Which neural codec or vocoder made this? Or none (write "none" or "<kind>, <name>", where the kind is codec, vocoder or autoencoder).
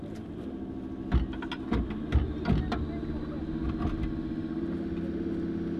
none